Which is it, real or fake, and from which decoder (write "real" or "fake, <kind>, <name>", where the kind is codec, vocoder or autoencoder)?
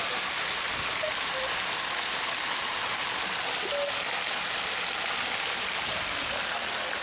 real